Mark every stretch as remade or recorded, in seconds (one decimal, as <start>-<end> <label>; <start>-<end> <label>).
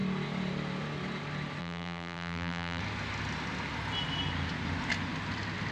0.0-1.6 recorded; 1.6-2.8 remade; 2.8-5.7 recorded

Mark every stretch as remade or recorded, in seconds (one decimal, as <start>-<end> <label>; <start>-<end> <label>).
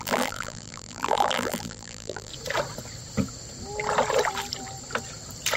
0.0-2.3 remade; 2.3-5.6 recorded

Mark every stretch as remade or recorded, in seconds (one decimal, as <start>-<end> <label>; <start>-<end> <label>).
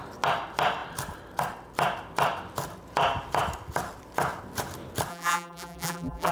0.0-5.1 recorded; 5.1-6.3 remade